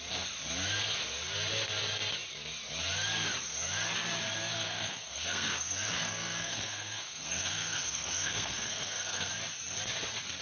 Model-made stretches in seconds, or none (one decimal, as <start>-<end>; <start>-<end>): 4.5-9.3